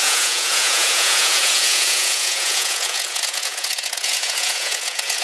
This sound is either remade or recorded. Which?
remade